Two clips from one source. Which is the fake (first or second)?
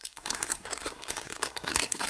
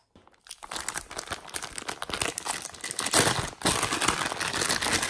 first